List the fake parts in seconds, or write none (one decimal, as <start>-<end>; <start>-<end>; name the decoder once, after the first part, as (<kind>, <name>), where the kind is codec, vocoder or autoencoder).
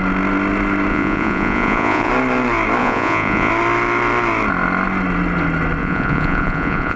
0.9-2.1 (vocoder, Vocos); 2.8-3.5; 5.8-7.0